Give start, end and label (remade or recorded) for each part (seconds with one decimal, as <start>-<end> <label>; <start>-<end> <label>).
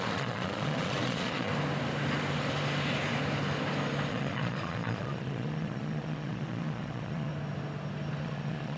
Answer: 0.0-1.5 remade; 1.5-4.1 recorded; 4.1-7.3 remade; 7.3-8.2 recorded; 8.2-8.8 remade